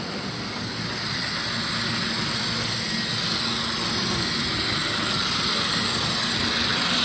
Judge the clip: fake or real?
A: real